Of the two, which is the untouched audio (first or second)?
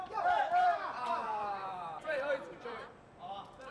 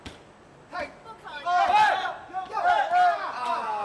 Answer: second